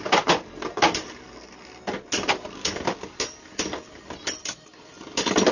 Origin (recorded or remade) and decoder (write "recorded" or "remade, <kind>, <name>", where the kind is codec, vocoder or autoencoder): recorded